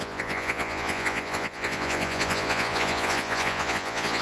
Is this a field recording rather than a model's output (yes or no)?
no